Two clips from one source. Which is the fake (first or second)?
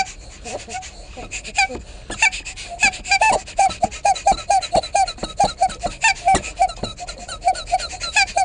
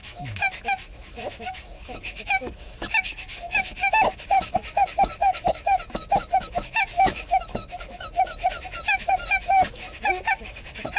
second